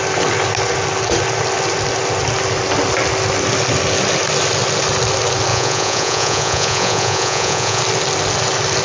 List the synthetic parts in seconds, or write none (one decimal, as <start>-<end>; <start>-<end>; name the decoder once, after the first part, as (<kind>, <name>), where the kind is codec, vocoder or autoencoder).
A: 5.5-7.8 (vocoder, Vocos)